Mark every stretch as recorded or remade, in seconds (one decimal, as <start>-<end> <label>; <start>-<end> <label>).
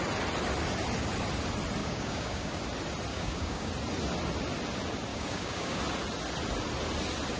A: 0.0-1.8 recorded; 1.8-2.6 remade; 2.6-3.1 recorded; 3.1-3.7 remade; 3.7-5.1 recorded; 5.1-5.8 remade; 5.8-7.4 recorded